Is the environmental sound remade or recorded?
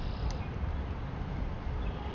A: remade